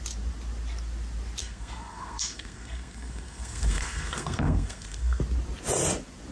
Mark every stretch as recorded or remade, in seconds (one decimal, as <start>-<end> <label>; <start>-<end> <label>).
0.0-1.4 recorded; 1.4-5.2 remade; 5.2-6.3 recorded